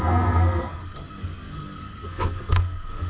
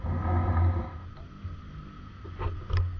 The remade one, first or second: first